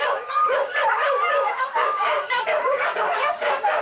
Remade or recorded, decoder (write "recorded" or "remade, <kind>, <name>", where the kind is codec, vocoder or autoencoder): remade, codec, DAC